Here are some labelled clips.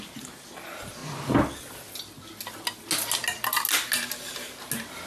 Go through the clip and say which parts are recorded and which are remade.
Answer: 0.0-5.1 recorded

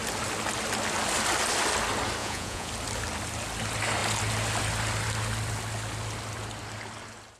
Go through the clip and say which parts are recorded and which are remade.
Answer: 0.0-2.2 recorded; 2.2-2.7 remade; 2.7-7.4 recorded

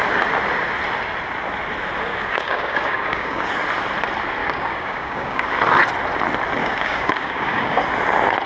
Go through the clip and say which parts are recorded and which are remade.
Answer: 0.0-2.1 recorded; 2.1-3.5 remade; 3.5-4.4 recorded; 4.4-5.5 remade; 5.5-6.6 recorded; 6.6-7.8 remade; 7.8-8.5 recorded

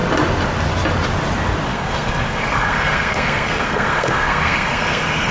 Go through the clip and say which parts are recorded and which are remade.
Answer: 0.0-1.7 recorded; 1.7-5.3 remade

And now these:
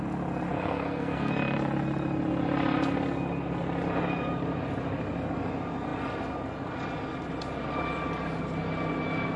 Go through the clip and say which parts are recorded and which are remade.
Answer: 0.0-0.5 recorded; 0.5-1.3 remade; 1.3-9.4 recorded

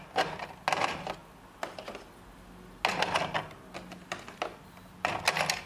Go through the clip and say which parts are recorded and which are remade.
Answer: 0.0-5.7 recorded

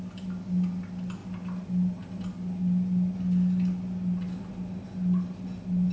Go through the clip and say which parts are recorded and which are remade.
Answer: 0.0-5.9 recorded